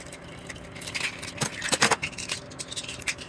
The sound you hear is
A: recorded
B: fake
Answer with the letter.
A